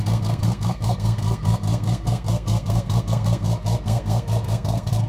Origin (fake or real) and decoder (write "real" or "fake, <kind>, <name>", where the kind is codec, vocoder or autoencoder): fake, codec, SNAC